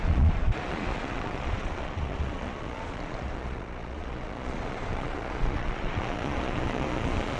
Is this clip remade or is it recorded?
remade